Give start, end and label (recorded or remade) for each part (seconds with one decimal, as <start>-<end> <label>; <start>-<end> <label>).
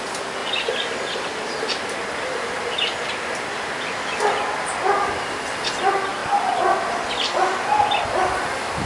0.0-8.9 recorded